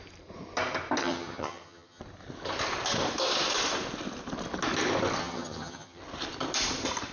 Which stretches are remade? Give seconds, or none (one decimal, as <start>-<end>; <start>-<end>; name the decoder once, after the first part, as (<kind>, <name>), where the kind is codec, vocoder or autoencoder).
1.0-2.0 (vocoder, HiFi-GAN); 5.2-6.0